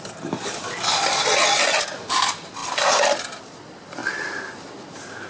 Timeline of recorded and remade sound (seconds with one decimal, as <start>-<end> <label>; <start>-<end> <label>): 0.0-5.3 recorded